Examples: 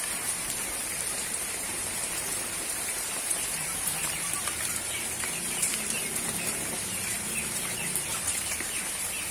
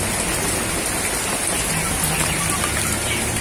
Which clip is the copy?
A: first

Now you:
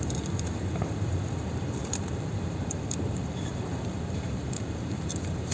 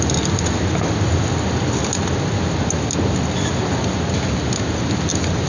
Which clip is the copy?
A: first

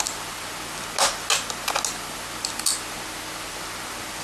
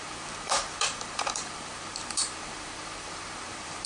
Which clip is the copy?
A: second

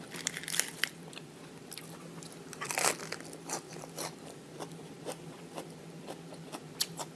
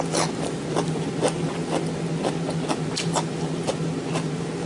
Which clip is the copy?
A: first